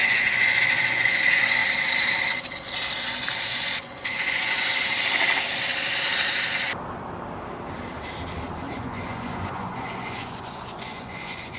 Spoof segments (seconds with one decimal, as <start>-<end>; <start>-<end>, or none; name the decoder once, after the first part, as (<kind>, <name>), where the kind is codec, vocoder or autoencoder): 0.0-1.6 (vocoder, Vocos); 3.4-4.7; 8.7-11.6